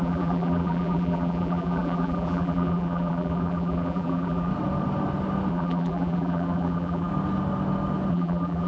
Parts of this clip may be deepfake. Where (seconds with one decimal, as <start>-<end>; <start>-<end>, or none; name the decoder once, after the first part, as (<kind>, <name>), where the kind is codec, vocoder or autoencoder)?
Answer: 0.0-4.5 (vocoder, BigVGAN v2); 5.5-7.1; 8.1-8.7